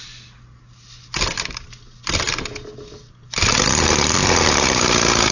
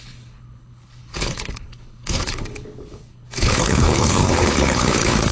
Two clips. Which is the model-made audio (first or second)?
second